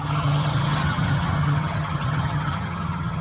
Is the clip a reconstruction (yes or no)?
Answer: yes